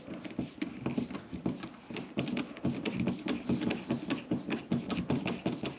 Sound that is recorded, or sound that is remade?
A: recorded